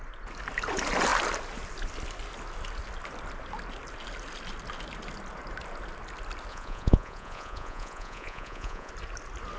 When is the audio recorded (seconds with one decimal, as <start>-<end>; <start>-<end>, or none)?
0.0-6.5; 8.9-9.6